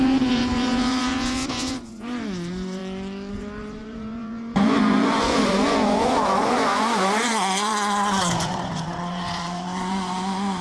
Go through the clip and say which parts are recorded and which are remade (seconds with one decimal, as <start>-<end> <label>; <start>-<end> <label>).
0.0-2.8 remade; 2.8-3.3 recorded; 3.3-10.6 remade